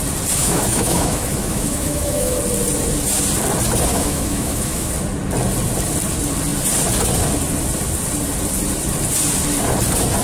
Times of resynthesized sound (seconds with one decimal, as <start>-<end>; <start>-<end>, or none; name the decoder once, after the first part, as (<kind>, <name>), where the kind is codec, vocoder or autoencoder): 0.4-2.4 (autoencoder, DAC-VAE); 3.9-4.9